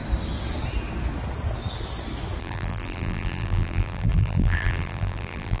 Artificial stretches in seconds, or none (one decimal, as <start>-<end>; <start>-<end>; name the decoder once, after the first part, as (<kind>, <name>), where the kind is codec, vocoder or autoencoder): 2.4-5.6 (vocoder, BigVGAN v2)

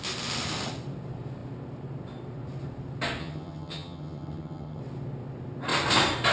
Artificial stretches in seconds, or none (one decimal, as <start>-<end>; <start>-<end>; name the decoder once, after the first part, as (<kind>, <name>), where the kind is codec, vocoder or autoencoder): 3.2-4.8 (vocoder, HiFi-GAN)

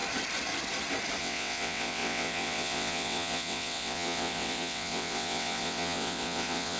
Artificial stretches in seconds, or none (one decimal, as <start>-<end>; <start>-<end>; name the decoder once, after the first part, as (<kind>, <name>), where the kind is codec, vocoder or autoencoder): 1.2-6.8 (vocoder, WaveNeXt)

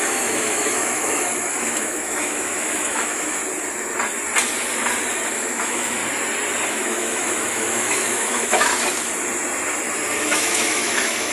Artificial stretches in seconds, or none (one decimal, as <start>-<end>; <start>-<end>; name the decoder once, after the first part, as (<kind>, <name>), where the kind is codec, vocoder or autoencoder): 0.0-3.4 (autoencoder, DAC-VAE); 5.3-6.0; 6.7-8.7; 10.1-11.3

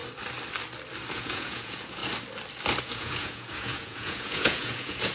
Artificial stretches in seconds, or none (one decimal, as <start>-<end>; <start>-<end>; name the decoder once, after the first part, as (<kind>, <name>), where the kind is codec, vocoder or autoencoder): 1.1-2.0 (vocoder, Vocos); 2.8-5.1

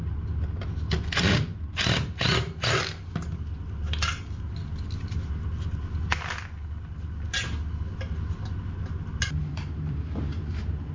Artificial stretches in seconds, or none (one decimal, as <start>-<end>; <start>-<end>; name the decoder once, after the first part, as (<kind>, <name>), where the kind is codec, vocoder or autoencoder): 9.4-10.9 (vocoder, BigVGAN v2)

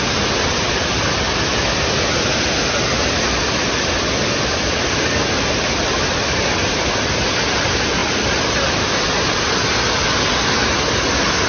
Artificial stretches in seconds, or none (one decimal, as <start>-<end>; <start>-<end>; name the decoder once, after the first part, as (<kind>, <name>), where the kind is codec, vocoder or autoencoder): none